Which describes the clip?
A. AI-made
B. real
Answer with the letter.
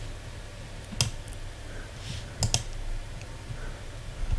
B